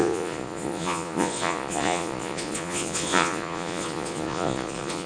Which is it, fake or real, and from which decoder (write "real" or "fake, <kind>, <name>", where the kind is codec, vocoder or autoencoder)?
fake, vocoder, Vocos